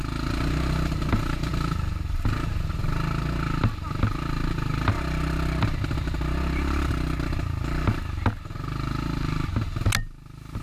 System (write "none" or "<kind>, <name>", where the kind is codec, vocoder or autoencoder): none